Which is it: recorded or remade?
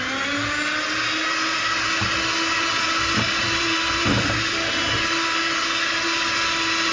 recorded